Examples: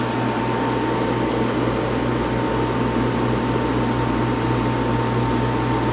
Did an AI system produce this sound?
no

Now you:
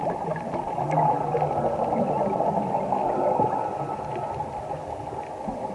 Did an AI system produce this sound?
no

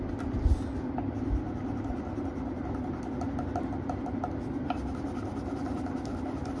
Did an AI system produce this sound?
no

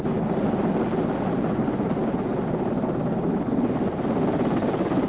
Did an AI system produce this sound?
no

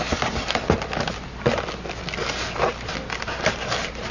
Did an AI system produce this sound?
no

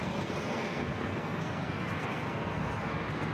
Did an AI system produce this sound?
yes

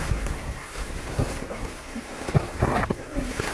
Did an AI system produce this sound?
yes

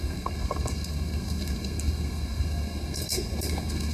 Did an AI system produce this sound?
yes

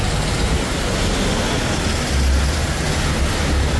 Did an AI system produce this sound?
no